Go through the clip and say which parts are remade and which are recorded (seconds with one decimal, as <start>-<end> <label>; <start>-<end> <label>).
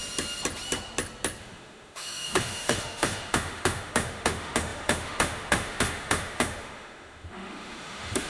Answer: 0.0-1.4 recorded; 1.4-8.3 remade